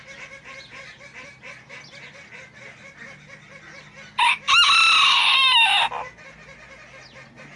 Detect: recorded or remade recorded